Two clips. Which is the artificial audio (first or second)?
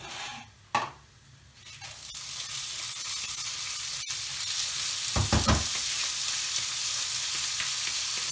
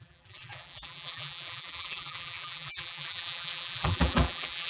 second